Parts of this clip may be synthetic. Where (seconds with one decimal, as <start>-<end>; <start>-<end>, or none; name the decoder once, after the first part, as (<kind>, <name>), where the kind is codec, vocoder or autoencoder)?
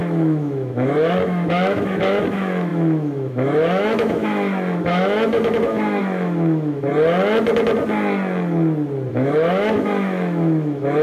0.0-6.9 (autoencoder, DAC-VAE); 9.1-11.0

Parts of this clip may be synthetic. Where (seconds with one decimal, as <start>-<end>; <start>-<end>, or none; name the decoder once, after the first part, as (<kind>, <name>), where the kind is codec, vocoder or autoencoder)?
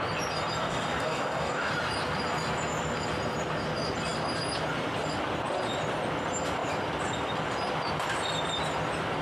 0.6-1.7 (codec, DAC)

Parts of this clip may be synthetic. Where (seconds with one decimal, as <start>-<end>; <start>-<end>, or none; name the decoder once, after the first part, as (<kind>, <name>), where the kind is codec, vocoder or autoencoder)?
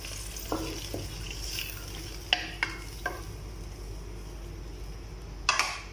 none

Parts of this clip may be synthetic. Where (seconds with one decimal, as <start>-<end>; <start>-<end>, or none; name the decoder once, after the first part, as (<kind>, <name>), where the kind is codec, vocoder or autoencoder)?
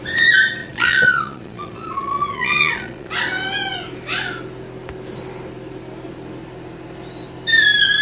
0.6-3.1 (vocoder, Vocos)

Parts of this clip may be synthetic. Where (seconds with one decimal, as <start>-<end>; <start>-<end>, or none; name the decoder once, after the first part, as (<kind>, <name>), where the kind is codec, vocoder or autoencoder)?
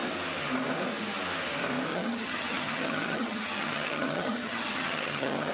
1.9-5.5 (vocoder, HiFi-GAN)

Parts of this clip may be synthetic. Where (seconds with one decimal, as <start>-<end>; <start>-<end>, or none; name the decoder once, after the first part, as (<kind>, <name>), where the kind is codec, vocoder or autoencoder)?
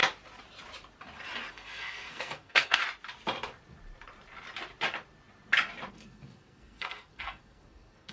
1.5-2.8 (codec, SNAC); 5.9-8.1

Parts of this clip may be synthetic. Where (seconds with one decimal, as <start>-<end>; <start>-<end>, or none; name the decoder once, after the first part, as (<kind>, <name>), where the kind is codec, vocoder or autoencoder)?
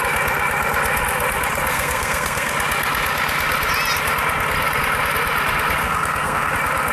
1.7-2.5 (codec, SNAC); 5.8-6.5